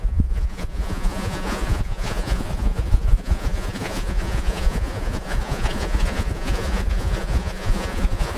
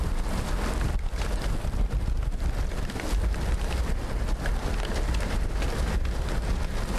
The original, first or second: second